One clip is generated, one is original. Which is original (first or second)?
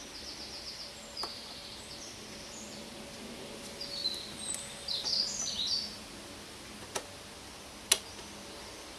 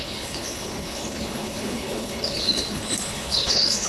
first